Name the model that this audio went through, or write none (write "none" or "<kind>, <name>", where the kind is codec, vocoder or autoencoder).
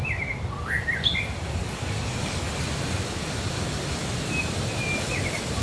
none